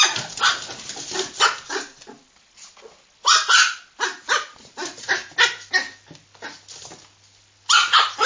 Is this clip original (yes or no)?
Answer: yes